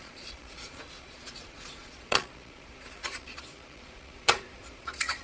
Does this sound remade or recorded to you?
remade